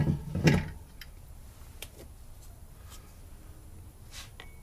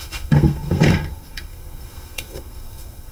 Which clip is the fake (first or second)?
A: second